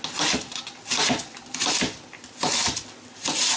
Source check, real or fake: real